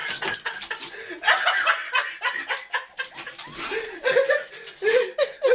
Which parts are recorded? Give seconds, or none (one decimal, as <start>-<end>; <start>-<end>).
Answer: 0.0-5.5